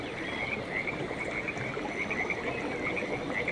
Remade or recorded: recorded